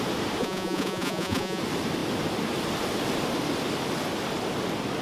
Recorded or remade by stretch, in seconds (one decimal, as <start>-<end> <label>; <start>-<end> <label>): 0.0-0.4 recorded; 0.4-1.6 remade; 1.6-5.0 recorded